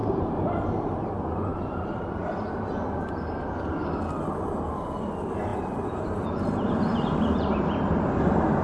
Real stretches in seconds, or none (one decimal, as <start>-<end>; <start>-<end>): 1.1-1.5; 2.3-5.5; 8.2-8.6